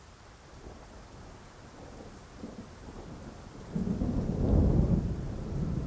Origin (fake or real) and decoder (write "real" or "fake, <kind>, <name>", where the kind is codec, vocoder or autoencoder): real